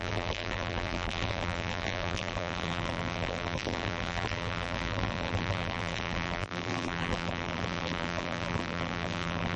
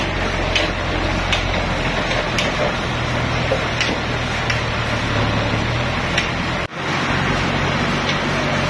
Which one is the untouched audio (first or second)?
second